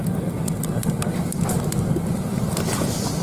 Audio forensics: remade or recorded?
recorded